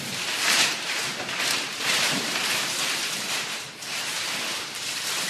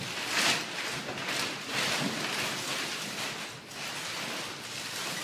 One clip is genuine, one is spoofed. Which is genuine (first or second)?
second